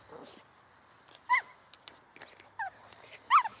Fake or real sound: real